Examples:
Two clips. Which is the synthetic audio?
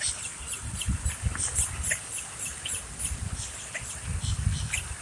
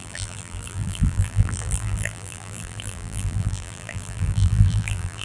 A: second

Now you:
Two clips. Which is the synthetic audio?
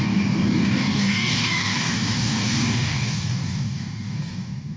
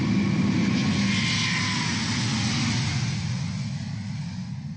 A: first